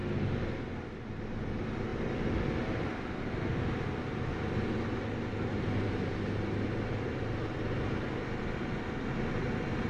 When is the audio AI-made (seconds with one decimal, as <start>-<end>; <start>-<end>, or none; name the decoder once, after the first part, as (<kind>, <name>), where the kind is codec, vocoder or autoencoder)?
none